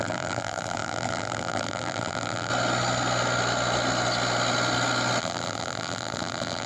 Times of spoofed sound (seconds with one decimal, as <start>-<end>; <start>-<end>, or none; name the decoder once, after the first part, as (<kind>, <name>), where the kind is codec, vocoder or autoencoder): 0.0-2.5 (vocoder, BigVGAN v2); 5.2-6.7